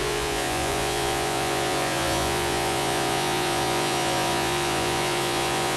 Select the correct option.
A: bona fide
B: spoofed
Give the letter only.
B